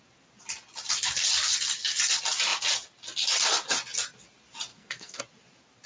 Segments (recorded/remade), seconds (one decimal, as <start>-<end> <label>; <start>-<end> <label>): 0.0-4.7 recorded; 4.7-5.2 remade; 5.2-5.9 recorded

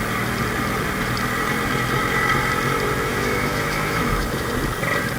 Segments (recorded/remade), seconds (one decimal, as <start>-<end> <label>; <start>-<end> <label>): 0.0-3.1 recorded; 3.1-4.5 remade; 4.5-5.2 recorded

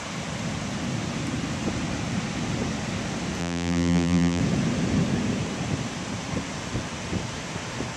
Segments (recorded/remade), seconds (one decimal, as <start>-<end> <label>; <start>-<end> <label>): 0.0-3.4 recorded; 3.4-4.4 remade; 4.4-8.0 recorded

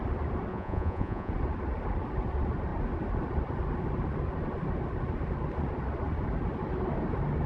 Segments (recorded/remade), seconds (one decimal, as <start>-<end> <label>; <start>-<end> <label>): 0.0-0.5 recorded; 0.5-1.3 remade; 1.3-7.5 recorded

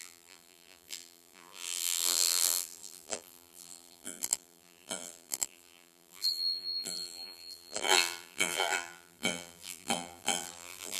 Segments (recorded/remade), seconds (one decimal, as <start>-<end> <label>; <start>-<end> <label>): 0.0-11.0 remade

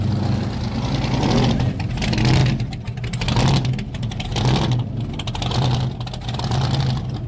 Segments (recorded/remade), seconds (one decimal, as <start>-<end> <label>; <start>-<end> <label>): 0.0-7.3 recorded

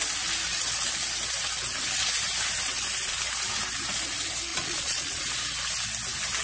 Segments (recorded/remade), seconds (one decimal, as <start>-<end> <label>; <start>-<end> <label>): 0.0-4.5 recorded; 4.5-5.2 remade; 5.2-6.4 recorded

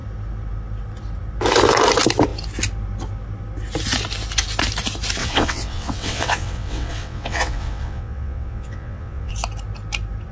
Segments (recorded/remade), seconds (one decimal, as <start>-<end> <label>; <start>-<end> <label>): 0.0-5.2 recorded; 5.2-9.3 remade; 9.3-10.3 recorded